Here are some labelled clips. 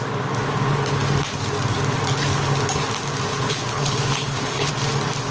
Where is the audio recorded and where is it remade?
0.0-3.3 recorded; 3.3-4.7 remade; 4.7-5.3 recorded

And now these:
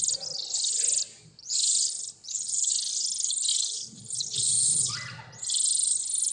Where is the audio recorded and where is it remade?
0.0-1.4 recorded; 1.4-2.7 remade; 2.7-3.5 recorded; 3.5-4.9 remade; 4.9-6.3 recorded

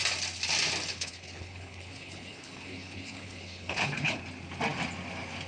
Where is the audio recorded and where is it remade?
0.0-0.9 recorded; 0.9-4.2 remade; 4.2-5.5 recorded

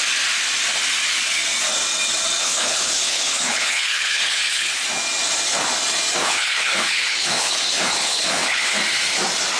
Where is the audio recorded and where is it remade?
0.0-2.4 recorded; 2.4-4.7 remade; 4.7-6.2 recorded; 6.2-8.8 remade; 8.8-9.6 recorded

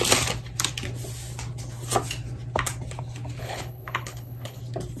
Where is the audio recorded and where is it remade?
0.0-3.4 recorded; 3.4-4.6 remade; 4.6-5.0 recorded

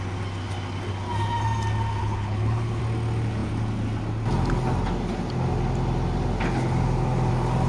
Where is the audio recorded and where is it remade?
0.0-2.0 recorded; 2.0-2.8 remade; 2.8-7.7 recorded

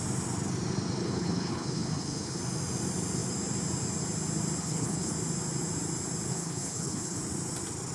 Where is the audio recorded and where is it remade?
0.0-1.0 recorded; 1.0-2.4 remade; 2.4-4.6 recorded; 4.6-5.1 remade; 5.1-6.3 recorded; 6.3-7.2 remade; 7.2-7.9 recorded